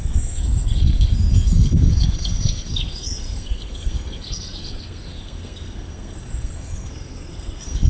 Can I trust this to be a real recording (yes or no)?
no